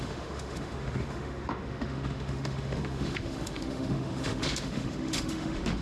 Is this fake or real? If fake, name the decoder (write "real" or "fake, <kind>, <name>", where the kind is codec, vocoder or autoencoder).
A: fake, autoencoder, DAC-VAE